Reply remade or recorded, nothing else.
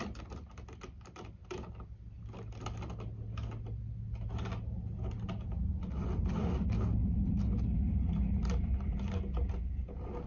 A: recorded